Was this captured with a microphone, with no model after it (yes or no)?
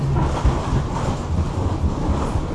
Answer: yes